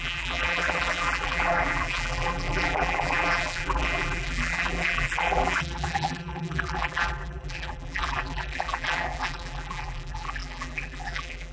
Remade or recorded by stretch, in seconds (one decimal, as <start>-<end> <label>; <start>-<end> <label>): 0.0-11.5 remade